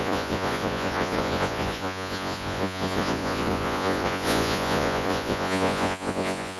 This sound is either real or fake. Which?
fake